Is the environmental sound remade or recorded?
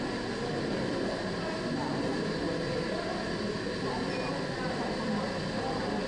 recorded